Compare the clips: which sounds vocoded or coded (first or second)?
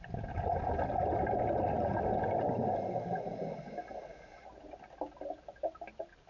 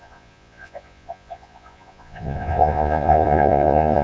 second